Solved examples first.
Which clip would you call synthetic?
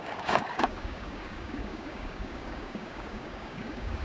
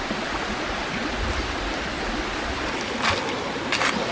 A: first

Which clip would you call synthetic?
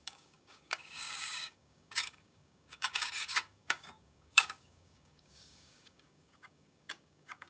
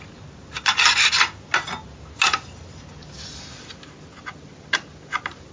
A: first